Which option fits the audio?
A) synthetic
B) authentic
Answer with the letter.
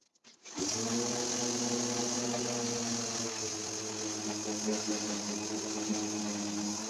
B